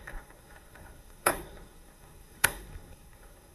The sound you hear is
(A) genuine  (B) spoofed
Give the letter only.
B